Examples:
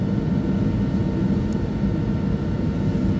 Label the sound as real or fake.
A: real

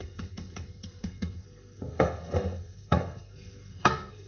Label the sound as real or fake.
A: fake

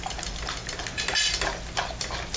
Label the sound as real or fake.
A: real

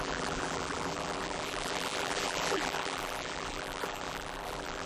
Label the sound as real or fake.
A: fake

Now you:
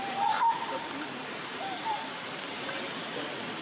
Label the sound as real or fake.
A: fake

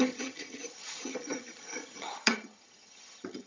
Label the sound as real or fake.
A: fake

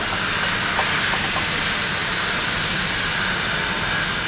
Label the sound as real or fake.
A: real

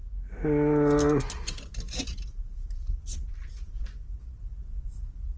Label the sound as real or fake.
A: real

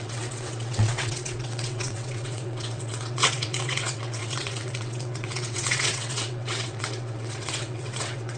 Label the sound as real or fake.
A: fake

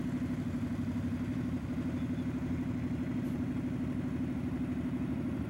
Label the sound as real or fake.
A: real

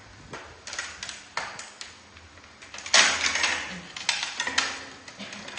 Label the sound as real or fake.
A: real